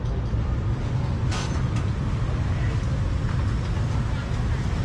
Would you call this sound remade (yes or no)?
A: no